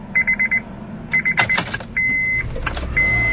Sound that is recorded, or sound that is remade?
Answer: recorded